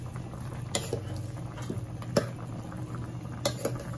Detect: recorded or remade recorded